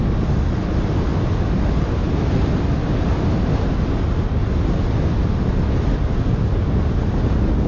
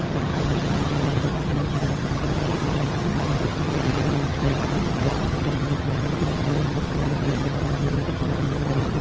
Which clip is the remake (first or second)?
second